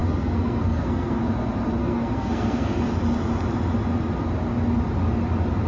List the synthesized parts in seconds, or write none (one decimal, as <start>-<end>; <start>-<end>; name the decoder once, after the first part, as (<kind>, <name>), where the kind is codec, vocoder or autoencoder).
0.0-1.2 (codec, SNAC); 1.8-2.8

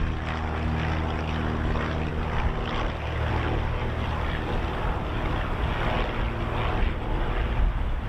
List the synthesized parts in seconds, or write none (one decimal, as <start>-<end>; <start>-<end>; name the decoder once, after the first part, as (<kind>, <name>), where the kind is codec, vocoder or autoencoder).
none

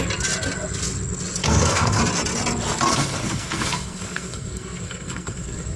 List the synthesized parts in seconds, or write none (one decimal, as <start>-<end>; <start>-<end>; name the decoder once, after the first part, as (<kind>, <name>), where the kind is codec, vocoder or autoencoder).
1.4-2.0 (codec, SNAC); 2.9-5.8

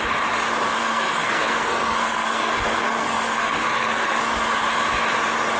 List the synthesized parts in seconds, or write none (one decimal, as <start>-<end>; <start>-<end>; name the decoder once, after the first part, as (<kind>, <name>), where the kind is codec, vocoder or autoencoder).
0.8-4.2 (codec, SNAC)

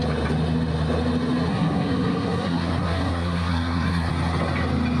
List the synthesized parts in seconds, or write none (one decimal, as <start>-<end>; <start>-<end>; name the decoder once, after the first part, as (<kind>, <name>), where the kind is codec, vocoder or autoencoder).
1.5-4.1 (codec, SNAC)

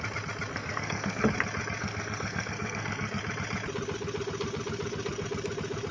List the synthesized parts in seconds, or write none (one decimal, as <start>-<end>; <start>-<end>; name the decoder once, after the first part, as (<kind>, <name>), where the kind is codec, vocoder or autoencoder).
0.5-1.2 (codec, SNAC); 1.8-3.2